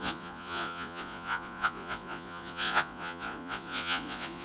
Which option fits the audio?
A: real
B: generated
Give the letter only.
B